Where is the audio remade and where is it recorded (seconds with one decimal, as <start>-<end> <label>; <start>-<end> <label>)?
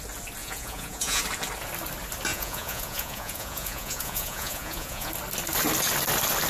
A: 0.0-0.4 recorded; 0.4-1.2 remade; 1.2-2.3 recorded; 2.3-5.1 remade; 5.1-6.5 recorded